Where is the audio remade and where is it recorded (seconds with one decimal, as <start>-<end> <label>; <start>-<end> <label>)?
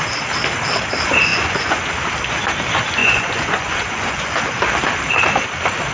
0.0-1.3 recorded; 1.3-1.9 remade; 1.9-3.0 recorded; 3.0-4.3 remade; 4.3-5.9 recorded